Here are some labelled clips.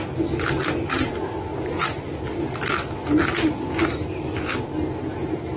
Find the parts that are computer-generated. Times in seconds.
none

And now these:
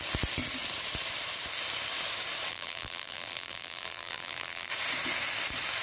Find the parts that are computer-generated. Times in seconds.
2.5-4.7 (vocoder, BigVGAN v2)

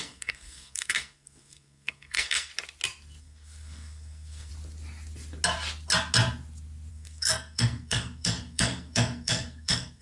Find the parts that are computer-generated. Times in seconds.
0.0-2.5 (codec, SNAC); 3.2-4.5; 6.9-10.0

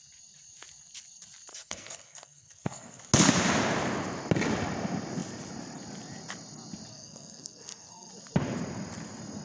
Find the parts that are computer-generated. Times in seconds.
1.5-3.0 (codec, SNAC); 6.9-8.1

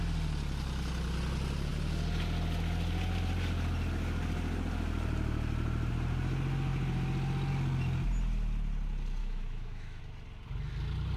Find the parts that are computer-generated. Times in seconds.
9.2-10.0 (autoencoder, DAC-VAE)